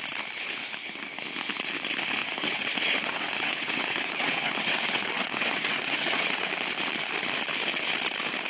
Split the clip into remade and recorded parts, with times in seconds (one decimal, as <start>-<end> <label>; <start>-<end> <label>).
0.0-2.2 recorded; 2.2-6.5 remade; 6.5-8.5 recorded